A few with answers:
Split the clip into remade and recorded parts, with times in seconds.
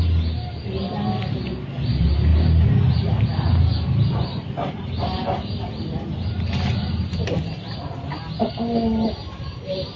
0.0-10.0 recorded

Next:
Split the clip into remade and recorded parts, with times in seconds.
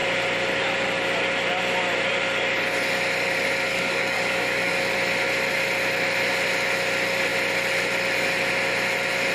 0.0-3.7 recorded; 3.7-4.7 remade; 4.7-9.3 recorded